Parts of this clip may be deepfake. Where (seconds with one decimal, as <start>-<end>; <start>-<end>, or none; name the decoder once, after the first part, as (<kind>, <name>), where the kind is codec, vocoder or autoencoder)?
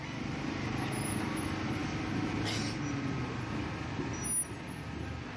none